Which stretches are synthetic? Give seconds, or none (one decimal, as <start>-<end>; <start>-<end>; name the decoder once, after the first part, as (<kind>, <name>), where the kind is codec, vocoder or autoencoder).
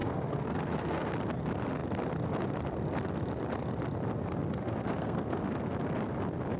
0.0-1.1 (codec, SNAC); 4.5-5.4